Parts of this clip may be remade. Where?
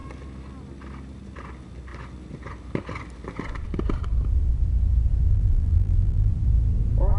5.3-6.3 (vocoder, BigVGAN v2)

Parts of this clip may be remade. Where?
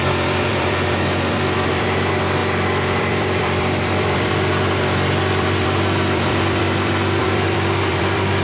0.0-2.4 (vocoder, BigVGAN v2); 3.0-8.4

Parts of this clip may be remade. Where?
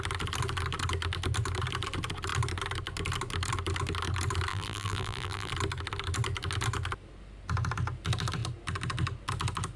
4.5-5.5 (vocoder, BigVGAN v2)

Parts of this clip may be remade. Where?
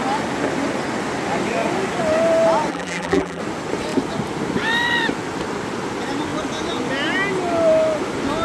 2.7-3.4 (vocoder, BigVGAN v2)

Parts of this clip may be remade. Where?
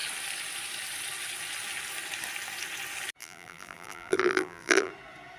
3.2-4.9 (vocoder, BigVGAN v2)